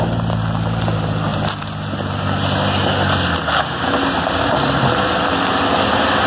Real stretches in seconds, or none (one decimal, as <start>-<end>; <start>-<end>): 0.0-6.3